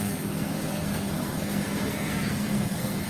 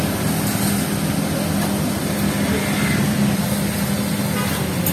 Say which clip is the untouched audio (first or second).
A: second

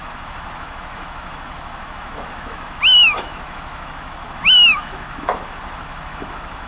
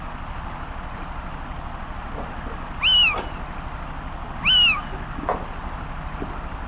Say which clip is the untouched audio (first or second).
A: second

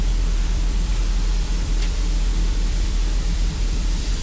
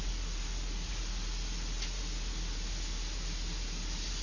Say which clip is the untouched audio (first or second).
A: second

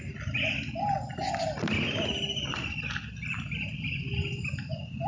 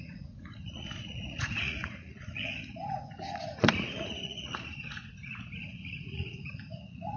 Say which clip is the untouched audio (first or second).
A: first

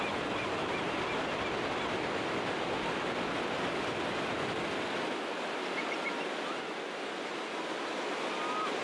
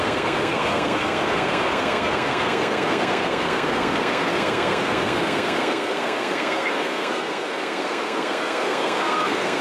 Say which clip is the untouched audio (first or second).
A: first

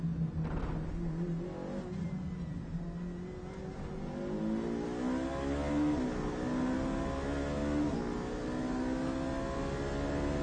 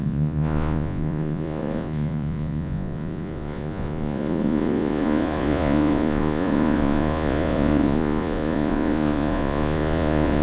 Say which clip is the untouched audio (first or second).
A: first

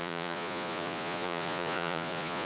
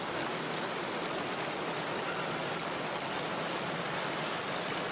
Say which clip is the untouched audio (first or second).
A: second